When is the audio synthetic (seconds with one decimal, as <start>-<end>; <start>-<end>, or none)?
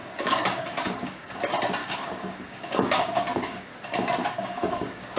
0.0-1.4; 1.8-3.7; 4.2-5.2